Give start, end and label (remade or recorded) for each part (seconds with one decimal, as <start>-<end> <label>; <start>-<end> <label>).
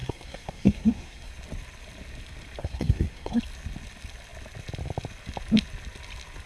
0.0-1.3 remade; 1.3-2.6 recorded; 2.6-3.4 remade; 3.4-6.5 recorded